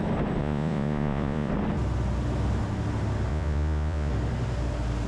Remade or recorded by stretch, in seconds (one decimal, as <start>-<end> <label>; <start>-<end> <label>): 0.0-0.4 recorded; 0.4-1.5 remade; 1.5-3.3 recorded; 3.3-4.1 remade; 4.1-5.1 recorded